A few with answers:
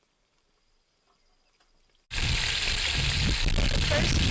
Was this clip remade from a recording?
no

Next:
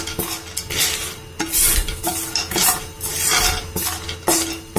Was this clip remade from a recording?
no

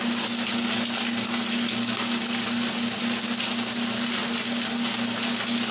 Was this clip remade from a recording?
no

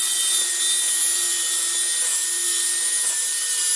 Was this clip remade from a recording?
no